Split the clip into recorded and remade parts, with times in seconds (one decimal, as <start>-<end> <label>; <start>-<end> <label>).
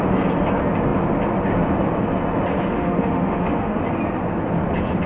0.0-2.6 recorded; 2.6-3.8 remade; 3.8-5.1 recorded